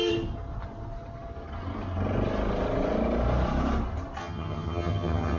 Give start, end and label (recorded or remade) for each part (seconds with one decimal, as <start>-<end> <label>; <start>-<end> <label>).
0.0-4.2 recorded; 4.2-5.4 remade